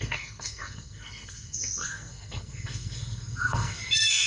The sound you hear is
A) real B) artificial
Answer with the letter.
B